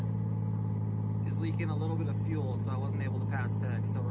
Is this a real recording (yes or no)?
yes